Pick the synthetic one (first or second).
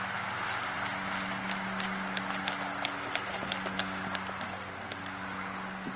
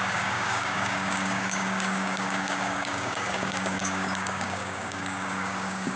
second